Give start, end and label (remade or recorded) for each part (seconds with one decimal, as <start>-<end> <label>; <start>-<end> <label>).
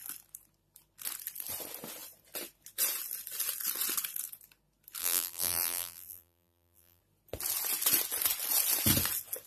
0.0-5.0 recorded; 5.0-7.0 remade; 7.0-9.5 recorded